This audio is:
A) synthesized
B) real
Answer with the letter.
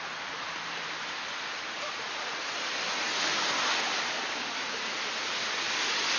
B